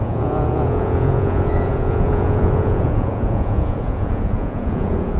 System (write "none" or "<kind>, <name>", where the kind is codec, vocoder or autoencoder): vocoder, Vocos